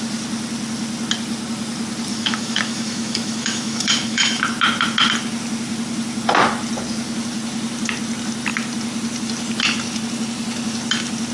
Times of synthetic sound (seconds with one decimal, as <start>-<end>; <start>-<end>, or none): 2.1-4.4